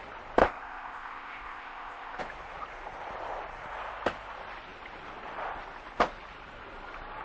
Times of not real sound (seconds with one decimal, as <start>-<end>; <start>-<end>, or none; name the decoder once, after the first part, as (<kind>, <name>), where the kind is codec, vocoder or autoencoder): 0.4-2.2 (codec, ZipCodec)